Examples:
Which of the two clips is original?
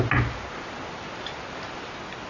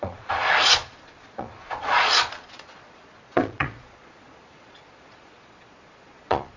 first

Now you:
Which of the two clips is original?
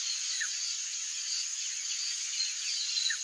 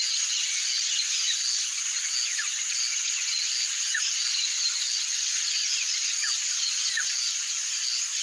second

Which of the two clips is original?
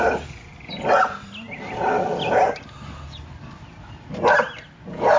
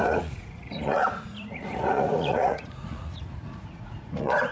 first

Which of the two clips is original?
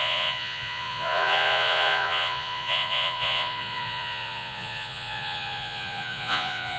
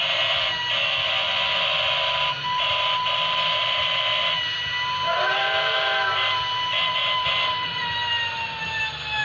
second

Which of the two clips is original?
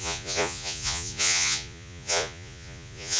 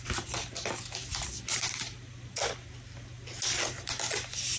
second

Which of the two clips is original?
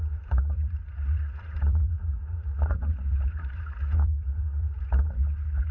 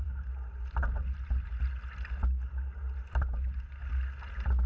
second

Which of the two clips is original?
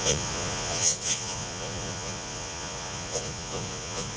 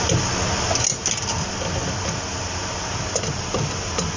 second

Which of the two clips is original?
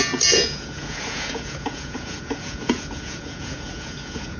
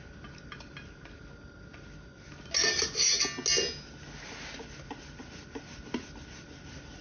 second